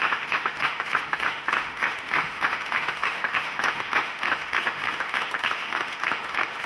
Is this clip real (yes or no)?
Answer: no